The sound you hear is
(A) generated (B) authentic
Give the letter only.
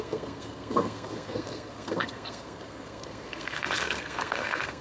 A